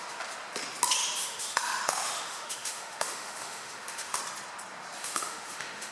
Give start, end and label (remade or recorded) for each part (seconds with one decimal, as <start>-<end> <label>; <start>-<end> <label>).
0.0-1.2 recorded; 1.2-4.2 remade; 4.2-5.0 recorded; 5.0-5.9 remade